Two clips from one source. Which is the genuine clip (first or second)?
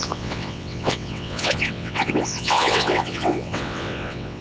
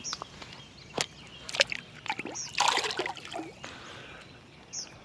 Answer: second